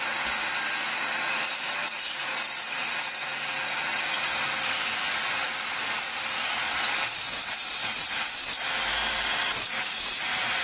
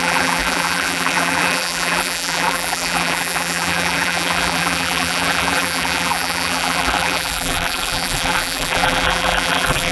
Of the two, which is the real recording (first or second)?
first